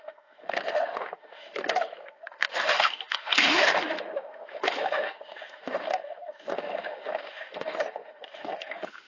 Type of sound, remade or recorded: remade